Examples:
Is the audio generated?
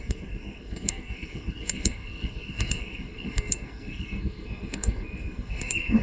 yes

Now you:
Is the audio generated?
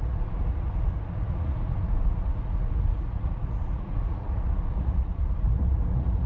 yes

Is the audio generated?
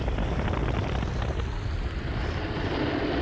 yes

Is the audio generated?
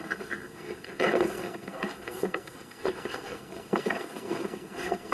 yes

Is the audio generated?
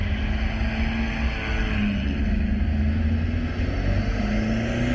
no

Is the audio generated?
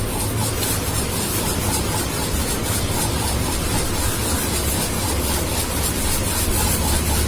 no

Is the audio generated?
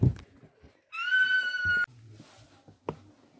no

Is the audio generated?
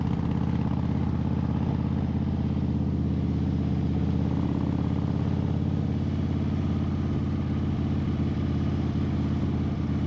no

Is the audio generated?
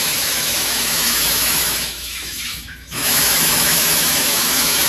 yes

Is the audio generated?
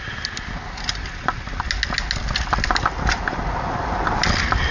no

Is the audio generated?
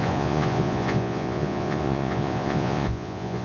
yes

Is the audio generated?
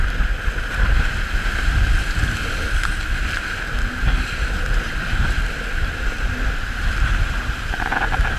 no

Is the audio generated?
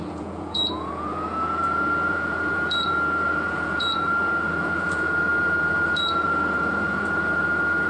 yes